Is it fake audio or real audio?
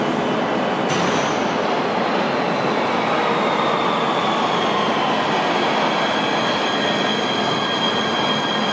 real